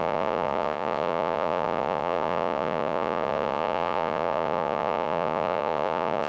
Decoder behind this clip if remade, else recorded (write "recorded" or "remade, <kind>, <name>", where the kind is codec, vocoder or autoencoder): remade, vocoder, Vocos